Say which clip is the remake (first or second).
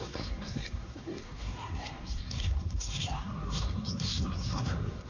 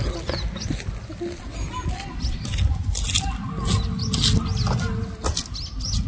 first